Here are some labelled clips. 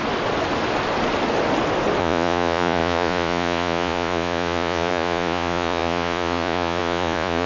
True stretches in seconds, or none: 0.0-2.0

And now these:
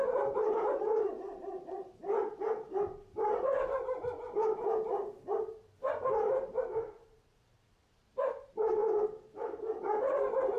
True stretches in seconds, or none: 2.0-4.9

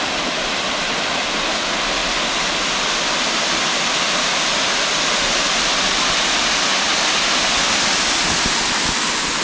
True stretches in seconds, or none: 0.0-9.4

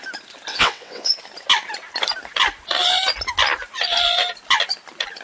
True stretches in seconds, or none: 0.0-0.5; 1.1-5.2

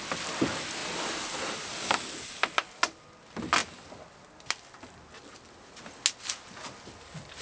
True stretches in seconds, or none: 0.0-7.4